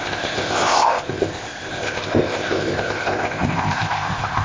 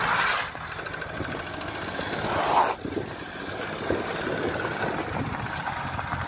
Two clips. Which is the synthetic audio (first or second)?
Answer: first